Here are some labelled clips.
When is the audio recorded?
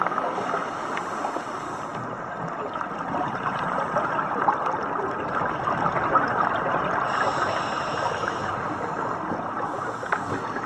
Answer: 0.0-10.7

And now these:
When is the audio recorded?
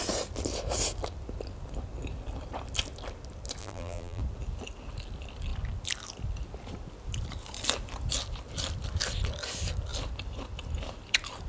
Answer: 0.0-3.6; 4.2-11.5